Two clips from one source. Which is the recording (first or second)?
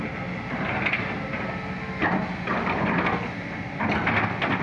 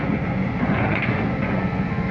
first